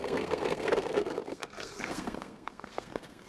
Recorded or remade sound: remade